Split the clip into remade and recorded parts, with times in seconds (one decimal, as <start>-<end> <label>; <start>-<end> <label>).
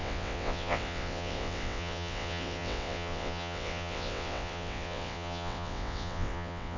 0.0-6.8 remade